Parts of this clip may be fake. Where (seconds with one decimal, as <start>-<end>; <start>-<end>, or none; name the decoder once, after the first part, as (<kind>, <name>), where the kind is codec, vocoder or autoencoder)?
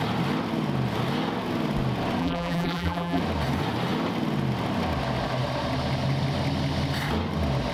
2.2-3.2 (vocoder, BigVGAN v2)